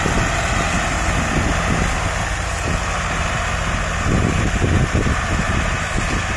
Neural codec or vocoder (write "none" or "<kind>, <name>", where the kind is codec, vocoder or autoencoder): none